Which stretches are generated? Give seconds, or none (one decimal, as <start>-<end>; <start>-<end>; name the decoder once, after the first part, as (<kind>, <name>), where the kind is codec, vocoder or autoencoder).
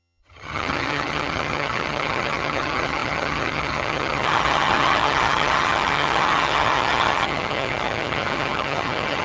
0.0-9.2 (vocoder, HiFi-GAN)